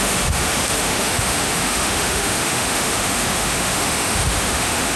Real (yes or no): no